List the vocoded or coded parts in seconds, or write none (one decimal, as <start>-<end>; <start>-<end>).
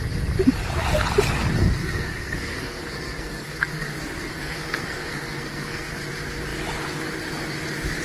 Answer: 1.6-5.9